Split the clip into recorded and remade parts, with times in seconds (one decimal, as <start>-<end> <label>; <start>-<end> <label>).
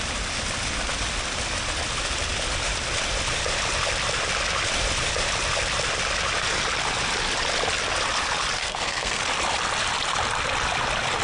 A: 0.0-8.6 recorded; 8.6-9.2 remade; 9.2-11.2 recorded